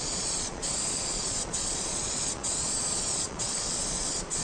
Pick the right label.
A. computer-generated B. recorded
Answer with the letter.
A